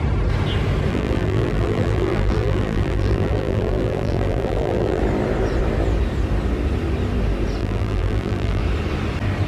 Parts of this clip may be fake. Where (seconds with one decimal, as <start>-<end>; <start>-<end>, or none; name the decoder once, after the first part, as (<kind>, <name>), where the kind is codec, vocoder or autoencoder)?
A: 0.9-5.0 (vocoder, BigVGAN v2); 7.6-8.6